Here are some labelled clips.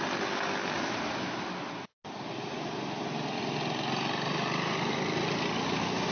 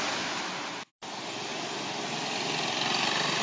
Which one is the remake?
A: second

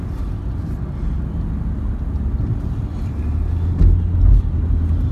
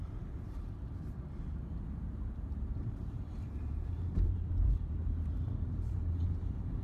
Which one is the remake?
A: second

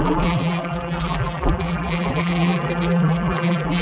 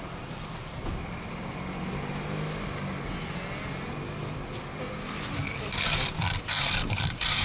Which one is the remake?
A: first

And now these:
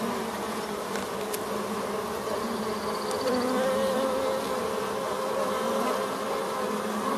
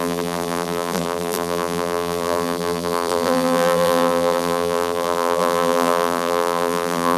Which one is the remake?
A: second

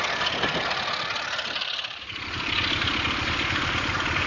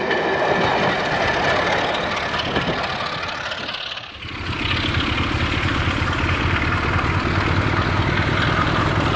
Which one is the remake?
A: first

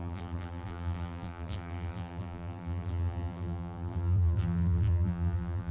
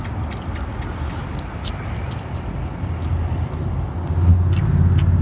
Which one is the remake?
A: first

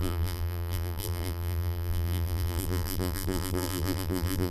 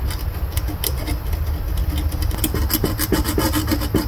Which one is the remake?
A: first